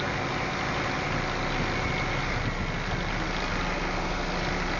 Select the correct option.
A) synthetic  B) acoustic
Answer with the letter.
B